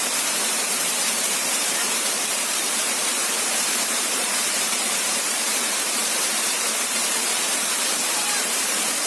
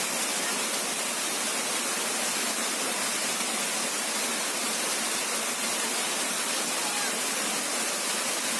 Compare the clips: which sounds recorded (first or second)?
second